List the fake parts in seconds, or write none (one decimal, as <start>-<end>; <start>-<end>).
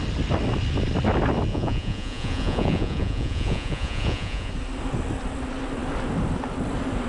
1.5-4.5